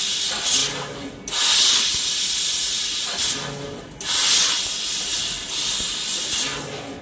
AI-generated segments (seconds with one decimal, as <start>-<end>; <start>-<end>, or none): none